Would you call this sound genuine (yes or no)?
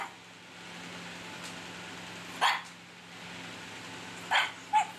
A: yes